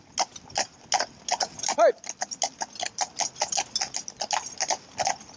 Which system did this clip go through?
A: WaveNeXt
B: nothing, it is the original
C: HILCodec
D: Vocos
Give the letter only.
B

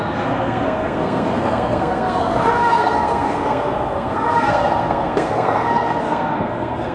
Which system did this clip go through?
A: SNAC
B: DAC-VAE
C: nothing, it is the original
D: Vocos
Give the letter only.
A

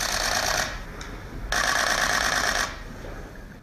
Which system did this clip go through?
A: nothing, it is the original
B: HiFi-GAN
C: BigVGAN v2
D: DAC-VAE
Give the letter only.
A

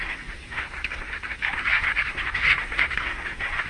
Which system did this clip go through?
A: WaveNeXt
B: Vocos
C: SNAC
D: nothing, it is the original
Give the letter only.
C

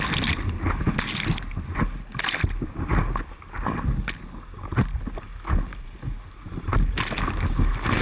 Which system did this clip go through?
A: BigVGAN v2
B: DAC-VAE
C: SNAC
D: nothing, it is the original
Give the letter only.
D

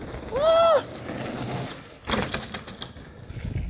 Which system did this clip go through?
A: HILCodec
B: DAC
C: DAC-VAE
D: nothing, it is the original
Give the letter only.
D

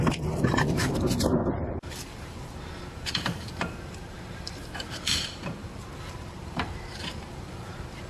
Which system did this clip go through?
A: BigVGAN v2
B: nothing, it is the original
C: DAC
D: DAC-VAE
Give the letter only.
A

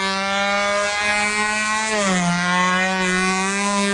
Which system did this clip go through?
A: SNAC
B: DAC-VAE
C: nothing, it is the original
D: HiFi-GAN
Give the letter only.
C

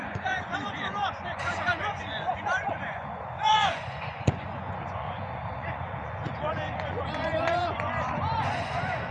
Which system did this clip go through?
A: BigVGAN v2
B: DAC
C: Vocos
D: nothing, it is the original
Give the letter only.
C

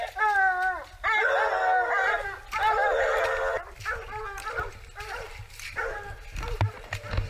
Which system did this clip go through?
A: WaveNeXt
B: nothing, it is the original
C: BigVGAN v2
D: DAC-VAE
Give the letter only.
B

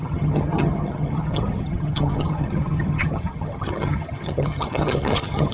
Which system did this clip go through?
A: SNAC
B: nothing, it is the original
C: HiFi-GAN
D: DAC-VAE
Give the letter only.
C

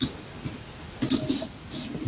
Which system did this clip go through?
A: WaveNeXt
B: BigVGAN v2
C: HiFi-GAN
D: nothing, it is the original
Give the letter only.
B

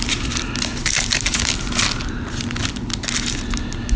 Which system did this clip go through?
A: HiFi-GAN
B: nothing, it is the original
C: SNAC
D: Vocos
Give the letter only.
B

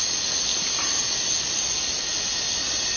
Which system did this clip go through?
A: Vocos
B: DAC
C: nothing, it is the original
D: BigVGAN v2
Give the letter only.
C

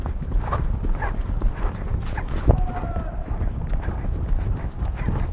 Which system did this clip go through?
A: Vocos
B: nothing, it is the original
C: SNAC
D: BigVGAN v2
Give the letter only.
B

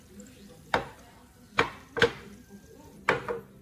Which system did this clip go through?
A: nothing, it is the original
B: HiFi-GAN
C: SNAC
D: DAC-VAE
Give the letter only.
A